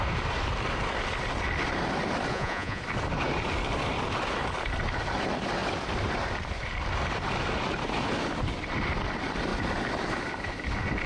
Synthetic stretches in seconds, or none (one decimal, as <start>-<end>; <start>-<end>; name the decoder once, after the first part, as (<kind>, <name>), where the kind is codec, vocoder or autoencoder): 2.3-2.8 (vocoder, Vocos)